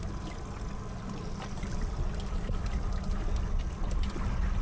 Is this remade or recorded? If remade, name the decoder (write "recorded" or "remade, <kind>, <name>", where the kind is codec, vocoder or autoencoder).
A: recorded